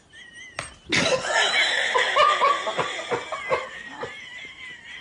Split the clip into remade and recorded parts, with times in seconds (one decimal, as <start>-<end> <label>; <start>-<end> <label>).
0.0-5.0 recorded